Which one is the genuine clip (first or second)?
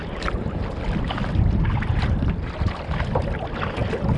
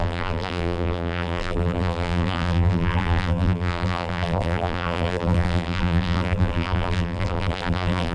first